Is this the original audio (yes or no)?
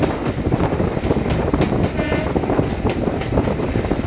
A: yes